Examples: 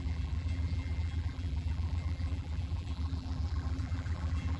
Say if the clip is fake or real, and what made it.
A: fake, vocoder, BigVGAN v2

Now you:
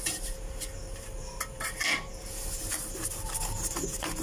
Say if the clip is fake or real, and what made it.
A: fake, vocoder, BigVGAN v2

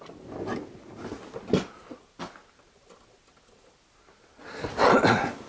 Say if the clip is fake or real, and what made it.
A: real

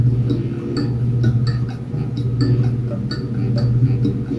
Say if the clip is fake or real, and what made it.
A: real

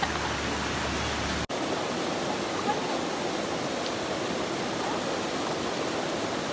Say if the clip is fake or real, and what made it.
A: real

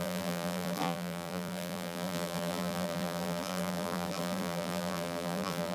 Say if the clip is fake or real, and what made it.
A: fake, vocoder, BigVGAN v2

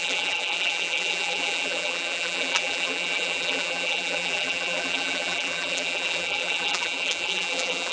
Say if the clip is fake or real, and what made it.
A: fake, vocoder, BigVGAN v2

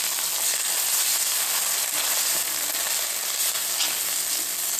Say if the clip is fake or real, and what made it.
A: real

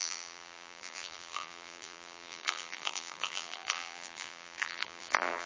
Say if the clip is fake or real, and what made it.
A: fake, vocoder, BigVGAN v2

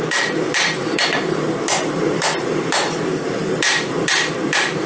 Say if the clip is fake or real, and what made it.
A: fake, vocoder, BigVGAN v2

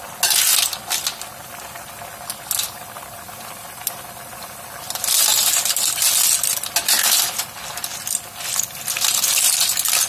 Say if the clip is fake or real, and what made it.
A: real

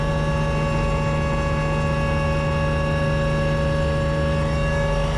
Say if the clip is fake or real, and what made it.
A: real